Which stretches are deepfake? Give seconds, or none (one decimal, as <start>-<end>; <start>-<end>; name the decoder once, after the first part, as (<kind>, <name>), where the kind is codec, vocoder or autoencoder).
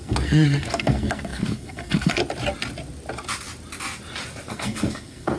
0.0-2.2 (codec, SNAC); 4.5-5.4